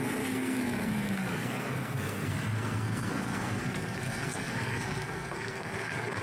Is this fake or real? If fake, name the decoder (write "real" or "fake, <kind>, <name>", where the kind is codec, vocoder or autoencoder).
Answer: fake, codec, SNAC